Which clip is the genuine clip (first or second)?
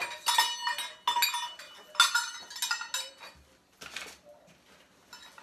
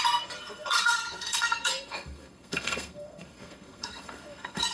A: first